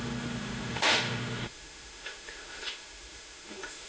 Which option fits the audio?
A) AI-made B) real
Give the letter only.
A